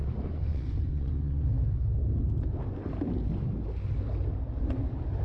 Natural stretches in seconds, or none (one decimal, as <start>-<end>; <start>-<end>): 1.5-5.2